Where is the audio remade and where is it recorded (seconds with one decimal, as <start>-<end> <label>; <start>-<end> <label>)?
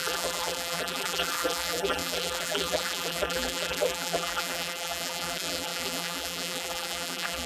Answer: 0.0-7.5 remade